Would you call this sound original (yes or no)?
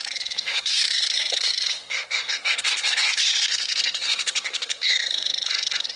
no